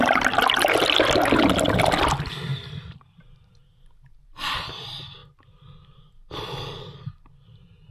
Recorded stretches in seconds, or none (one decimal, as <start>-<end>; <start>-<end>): 0.0-7.9